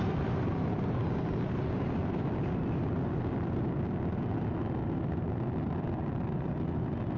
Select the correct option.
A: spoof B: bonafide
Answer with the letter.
B